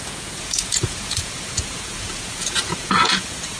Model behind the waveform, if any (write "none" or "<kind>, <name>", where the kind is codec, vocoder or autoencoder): vocoder, Vocos